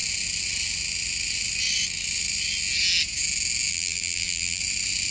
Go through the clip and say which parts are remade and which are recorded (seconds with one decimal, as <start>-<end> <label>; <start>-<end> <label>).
0.0-3.7 recorded; 3.7-4.6 remade; 4.6-5.1 recorded